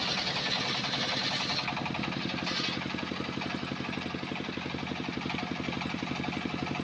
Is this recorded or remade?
recorded